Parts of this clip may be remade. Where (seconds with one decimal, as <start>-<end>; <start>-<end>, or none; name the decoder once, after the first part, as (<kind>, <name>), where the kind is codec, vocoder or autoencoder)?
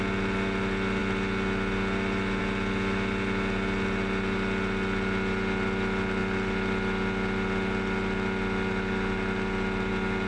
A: none